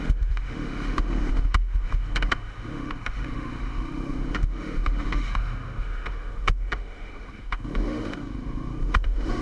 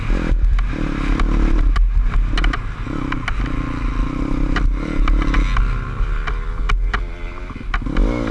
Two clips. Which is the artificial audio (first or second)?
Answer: first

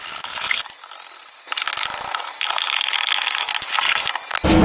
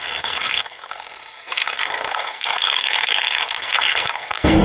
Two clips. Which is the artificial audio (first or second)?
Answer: second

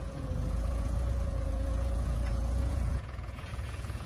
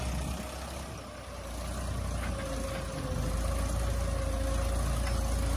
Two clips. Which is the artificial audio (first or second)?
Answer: first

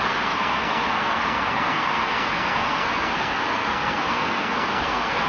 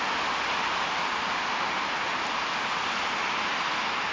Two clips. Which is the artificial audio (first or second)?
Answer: first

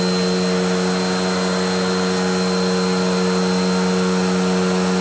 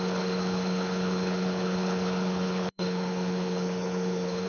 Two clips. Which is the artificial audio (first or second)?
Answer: second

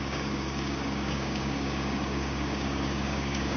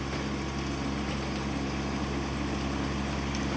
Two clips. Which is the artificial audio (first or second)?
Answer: first